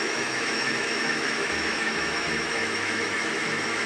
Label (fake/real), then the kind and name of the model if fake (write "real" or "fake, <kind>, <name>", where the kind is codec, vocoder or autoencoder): fake, autoencoder, DAC-VAE